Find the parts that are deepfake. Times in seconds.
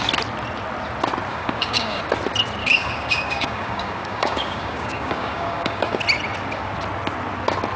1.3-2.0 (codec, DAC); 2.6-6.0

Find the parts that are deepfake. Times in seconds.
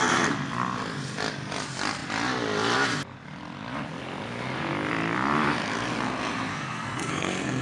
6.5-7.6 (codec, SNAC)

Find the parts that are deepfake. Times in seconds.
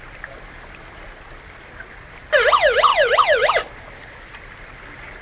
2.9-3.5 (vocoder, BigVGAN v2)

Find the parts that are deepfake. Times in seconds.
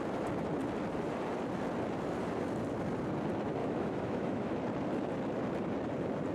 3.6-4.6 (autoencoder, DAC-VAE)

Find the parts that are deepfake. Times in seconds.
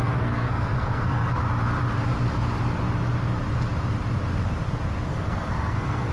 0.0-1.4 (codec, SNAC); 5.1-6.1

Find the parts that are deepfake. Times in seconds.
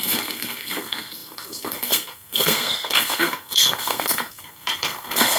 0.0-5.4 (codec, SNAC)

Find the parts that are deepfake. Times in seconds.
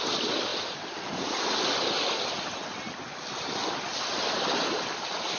none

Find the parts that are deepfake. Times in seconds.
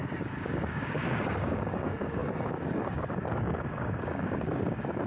0.0-5.1 (codec, DAC)